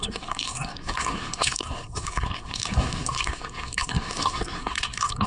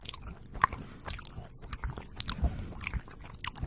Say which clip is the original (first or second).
second